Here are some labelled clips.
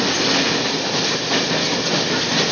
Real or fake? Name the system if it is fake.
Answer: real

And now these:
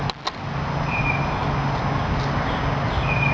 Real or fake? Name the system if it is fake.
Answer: real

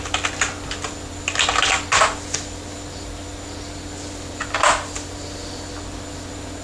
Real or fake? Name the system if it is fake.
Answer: real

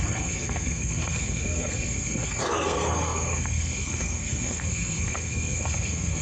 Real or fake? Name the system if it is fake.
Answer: fake, codec, SNAC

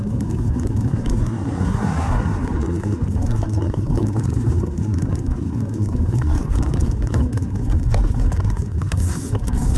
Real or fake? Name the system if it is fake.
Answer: fake, codec, SNAC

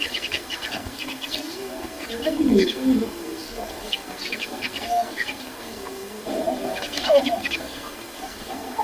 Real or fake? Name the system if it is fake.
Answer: fake, codec, SNAC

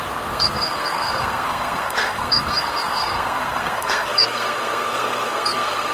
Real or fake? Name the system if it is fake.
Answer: fake, codec, SNAC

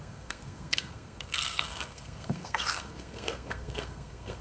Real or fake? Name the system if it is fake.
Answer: fake, codec, SNAC